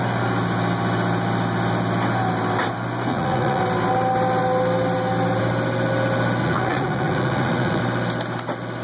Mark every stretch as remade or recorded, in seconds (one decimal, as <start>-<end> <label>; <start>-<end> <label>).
0.0-3.1 recorded; 3.1-3.6 remade; 3.6-6.4 recorded; 6.4-7.8 remade; 7.8-8.8 recorded